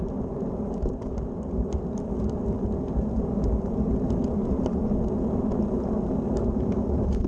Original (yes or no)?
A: yes